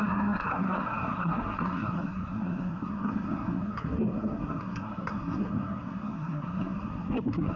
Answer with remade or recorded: remade